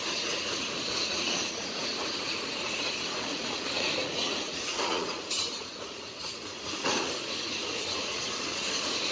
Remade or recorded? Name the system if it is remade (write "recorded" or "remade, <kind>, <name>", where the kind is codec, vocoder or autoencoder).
remade, vocoder, Vocos